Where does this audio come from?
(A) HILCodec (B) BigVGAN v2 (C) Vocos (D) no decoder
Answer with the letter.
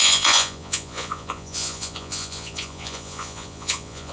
C